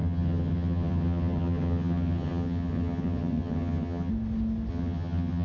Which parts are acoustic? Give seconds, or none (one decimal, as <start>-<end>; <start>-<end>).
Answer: 4.1-4.7